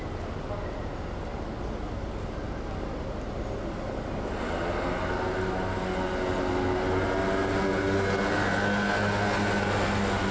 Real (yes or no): yes